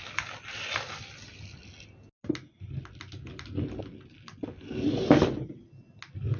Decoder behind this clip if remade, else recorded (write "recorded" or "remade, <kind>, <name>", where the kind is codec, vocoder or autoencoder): recorded